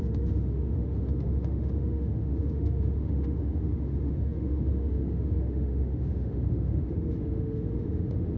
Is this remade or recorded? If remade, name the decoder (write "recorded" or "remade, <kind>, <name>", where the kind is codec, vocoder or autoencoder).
remade, autoencoder, DAC-VAE